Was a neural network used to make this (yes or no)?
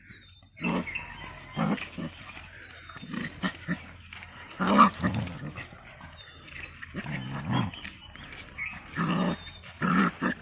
no